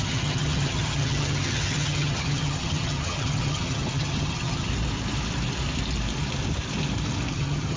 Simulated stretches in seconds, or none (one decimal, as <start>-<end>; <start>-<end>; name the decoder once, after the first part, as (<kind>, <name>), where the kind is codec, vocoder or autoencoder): 0.0-4.7 (vocoder, HiFi-GAN); 7.3-7.8